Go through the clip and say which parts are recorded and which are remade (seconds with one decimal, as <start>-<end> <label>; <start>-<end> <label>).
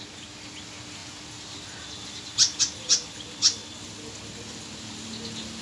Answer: 0.0-5.6 recorded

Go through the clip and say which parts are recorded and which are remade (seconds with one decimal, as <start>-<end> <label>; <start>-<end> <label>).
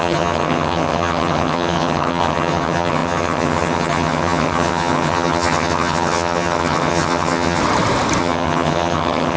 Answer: 0.0-7.6 remade; 7.6-8.2 recorded; 8.2-9.4 remade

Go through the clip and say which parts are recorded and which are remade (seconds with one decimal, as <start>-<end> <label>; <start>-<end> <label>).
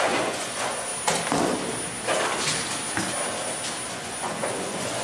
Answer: 0.0-0.9 remade; 0.9-3.9 recorded; 3.9-5.0 remade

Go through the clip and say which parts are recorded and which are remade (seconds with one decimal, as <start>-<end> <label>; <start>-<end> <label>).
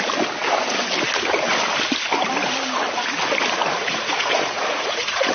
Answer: 0.0-3.7 recorded; 3.7-5.3 remade